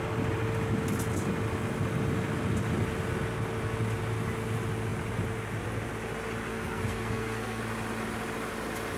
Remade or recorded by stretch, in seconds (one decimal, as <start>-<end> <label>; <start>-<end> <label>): 0.0-6.5 recorded; 6.5-7.6 remade; 7.6-9.0 recorded

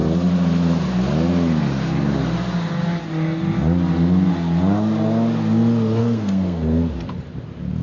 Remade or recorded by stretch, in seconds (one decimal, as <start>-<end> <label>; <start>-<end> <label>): 0.0-6.0 recorded; 6.0-6.9 remade; 6.9-7.8 recorded

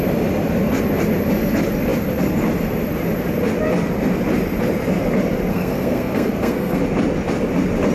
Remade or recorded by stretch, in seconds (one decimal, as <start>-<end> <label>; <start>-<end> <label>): 0.0-5.5 recorded; 5.5-6.8 remade; 6.8-7.9 recorded